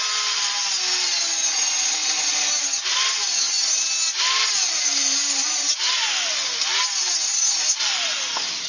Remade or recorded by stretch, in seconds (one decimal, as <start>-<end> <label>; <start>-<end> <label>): 0.0-8.7 recorded